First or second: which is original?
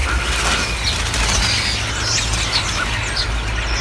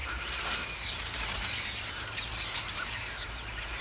first